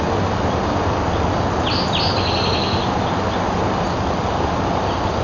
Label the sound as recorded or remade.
recorded